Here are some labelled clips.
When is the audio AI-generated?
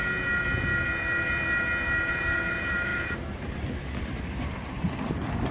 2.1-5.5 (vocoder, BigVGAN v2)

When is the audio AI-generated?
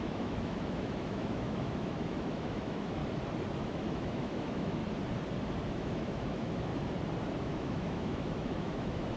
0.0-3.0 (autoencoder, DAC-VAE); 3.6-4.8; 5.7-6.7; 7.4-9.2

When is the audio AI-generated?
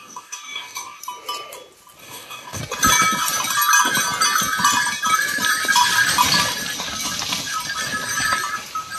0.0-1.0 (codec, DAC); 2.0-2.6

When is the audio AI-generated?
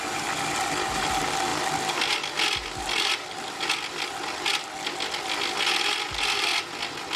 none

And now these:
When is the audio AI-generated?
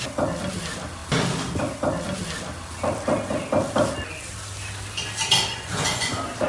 5.5-6.1 (vocoder, Vocos)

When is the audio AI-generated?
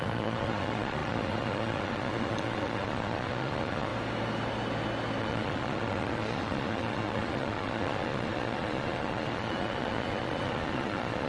0.0-3.9 (vocoder, Vocos); 5.2-11.3